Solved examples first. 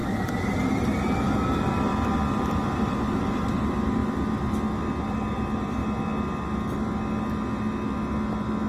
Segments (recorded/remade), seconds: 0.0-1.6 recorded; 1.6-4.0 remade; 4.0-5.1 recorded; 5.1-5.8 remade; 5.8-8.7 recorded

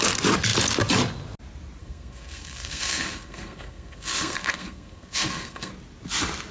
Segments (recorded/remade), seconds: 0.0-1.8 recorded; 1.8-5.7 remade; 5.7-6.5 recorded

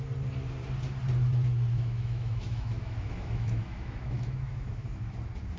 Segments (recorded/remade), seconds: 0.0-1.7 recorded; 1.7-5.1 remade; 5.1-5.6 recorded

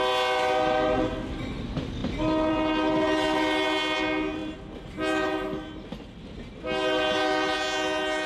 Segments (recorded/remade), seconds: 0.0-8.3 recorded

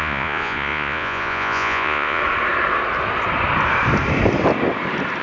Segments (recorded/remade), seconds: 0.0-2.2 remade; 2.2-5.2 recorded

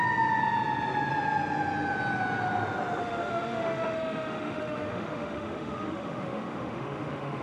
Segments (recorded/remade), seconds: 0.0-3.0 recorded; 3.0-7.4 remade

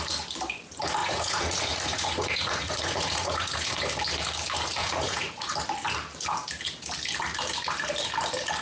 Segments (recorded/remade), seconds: 0.0-1.0 recorded; 1.0-3.8 remade; 3.8-4.8 recorded; 4.8-5.5 remade; 5.5-8.6 recorded